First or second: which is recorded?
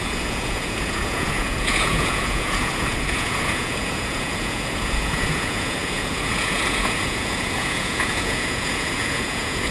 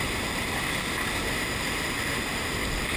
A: second